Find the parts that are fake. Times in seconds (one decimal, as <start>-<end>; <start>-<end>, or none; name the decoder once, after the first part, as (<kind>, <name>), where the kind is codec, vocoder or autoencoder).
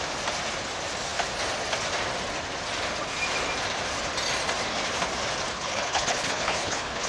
5.5-7.1 (codec, HILCodec)